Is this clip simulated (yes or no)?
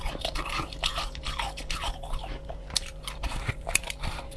yes